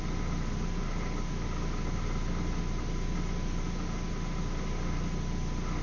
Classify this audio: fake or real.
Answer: real